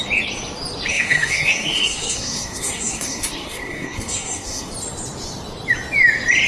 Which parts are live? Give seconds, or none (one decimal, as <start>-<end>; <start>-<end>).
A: 0.0-0.9; 4.7-6.5